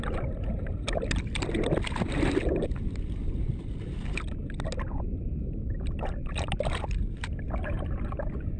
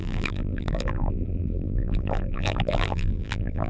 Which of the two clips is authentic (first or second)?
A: first